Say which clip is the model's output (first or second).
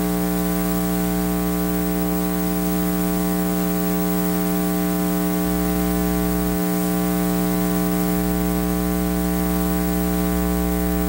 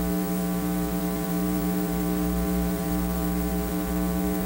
second